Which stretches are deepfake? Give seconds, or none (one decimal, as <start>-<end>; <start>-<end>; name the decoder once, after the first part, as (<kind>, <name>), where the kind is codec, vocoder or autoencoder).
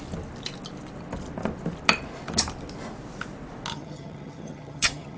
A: 3.7-5.2 (vocoder, HiFi-GAN)